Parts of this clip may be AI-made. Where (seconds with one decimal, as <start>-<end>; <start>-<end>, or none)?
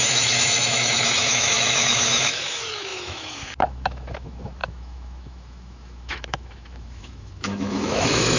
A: 0.0-8.4